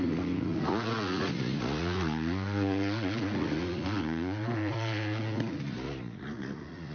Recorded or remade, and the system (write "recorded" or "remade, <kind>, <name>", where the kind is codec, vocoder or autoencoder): remade, vocoder, Vocos